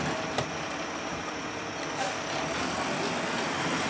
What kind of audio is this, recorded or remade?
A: recorded